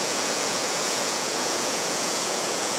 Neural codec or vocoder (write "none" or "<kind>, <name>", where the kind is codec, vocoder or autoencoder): vocoder, Vocos